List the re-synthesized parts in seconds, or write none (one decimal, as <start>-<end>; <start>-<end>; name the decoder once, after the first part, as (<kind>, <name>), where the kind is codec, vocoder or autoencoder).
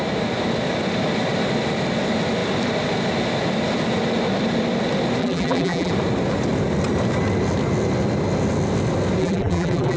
5.2-5.9 (vocoder, BigVGAN v2); 9.2-10.0